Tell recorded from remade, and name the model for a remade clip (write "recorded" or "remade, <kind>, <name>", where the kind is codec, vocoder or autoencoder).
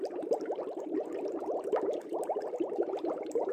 remade, vocoder, BigVGAN v2